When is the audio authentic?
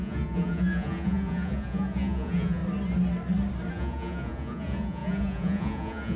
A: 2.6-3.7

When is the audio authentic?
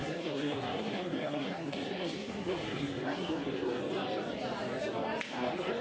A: 3.8-5.3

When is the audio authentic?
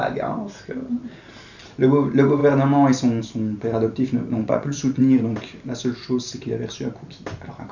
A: 0.0-4.4; 5.0-7.7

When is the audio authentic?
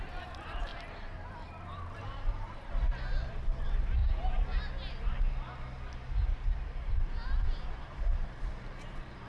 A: 4.0-7.7; 8.2-8.7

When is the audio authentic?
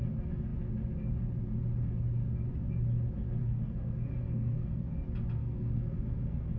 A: 0.0-3.4; 4.9-5.4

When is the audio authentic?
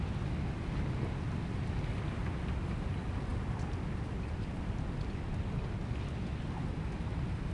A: 0.0-7.5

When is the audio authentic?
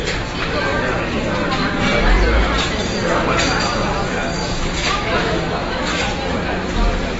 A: 0.0-4.4; 5.9-7.2